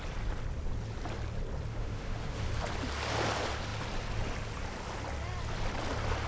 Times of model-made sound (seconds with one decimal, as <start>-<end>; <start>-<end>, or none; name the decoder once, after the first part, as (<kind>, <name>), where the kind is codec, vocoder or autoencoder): 1.7-2.5 (autoencoder, DAC-VAE)